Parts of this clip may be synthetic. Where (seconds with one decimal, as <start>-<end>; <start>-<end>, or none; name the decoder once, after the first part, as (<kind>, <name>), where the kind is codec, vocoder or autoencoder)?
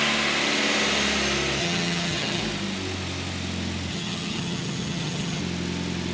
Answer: 1.6-2.4 (vocoder, HiFi-GAN); 3.9-5.4